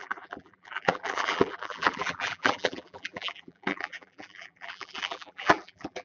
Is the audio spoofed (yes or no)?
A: yes